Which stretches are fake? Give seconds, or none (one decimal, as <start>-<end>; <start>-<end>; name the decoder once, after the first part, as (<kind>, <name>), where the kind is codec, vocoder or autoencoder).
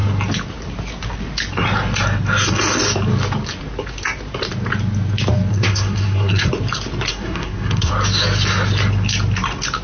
5.5-6.5 (codec, SNAC); 7.1-7.9